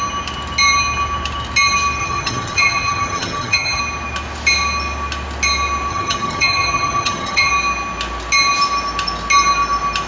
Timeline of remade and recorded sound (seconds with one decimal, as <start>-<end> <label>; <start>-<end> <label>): 0.0-2.0 recorded; 2.0-3.8 remade; 3.8-5.9 recorded; 5.9-7.5 remade; 7.5-10.1 recorded